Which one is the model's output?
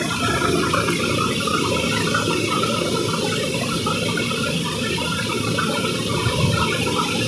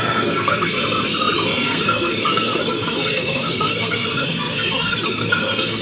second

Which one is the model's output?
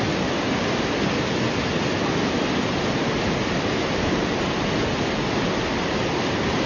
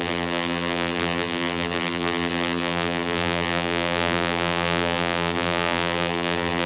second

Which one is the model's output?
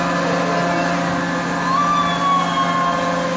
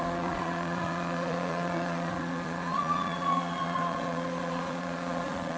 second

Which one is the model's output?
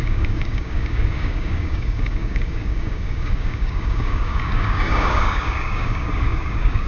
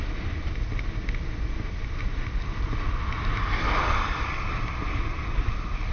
first